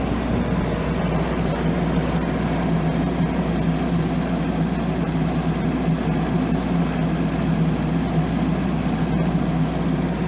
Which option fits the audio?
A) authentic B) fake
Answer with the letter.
A